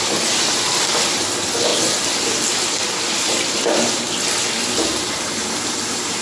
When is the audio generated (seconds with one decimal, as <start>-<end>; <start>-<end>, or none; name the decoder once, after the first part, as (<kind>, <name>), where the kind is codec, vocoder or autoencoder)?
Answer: none